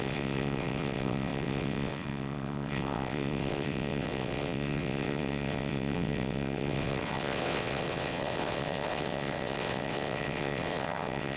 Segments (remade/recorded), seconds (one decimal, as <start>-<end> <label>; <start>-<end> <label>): 0.0-11.4 remade